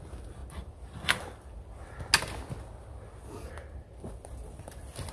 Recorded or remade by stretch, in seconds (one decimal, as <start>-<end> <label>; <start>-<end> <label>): 0.0-5.1 recorded